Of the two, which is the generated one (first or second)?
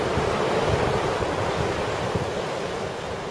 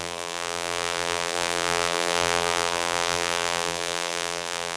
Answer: second